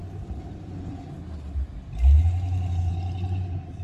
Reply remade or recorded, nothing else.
recorded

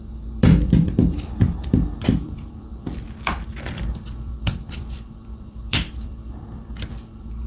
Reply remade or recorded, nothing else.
remade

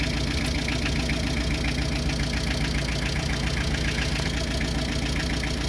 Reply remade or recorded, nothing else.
recorded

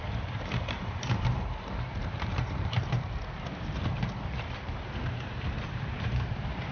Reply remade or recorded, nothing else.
remade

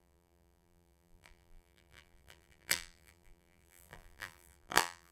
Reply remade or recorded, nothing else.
remade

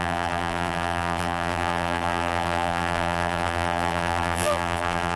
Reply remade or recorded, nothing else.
remade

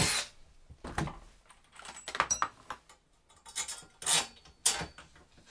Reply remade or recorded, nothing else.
recorded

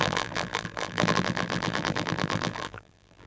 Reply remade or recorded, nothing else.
remade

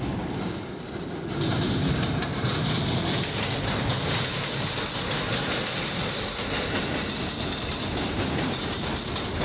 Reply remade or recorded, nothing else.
recorded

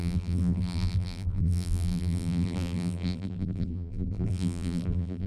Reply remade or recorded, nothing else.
remade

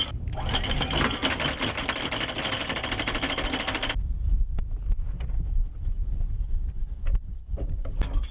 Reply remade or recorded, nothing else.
recorded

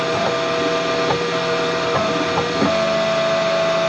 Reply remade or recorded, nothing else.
recorded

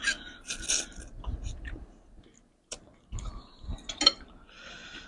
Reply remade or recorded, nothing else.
recorded